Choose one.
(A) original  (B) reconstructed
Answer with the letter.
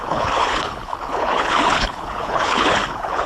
B